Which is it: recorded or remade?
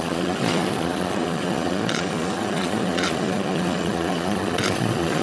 remade